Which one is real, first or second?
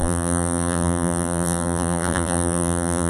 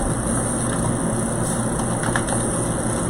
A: second